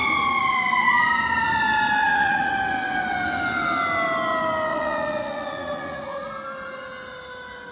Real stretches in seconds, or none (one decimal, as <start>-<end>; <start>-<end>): 0.0-2.0; 2.5-4.7; 6.3-7.7